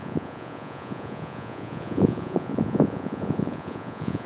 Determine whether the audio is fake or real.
fake